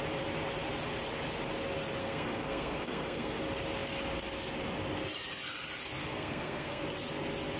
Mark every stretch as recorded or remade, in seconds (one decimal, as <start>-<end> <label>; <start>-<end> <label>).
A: 0.0-2.0 recorded; 2.0-3.4 remade; 3.4-6.0 recorded; 6.0-6.8 remade; 6.8-7.6 recorded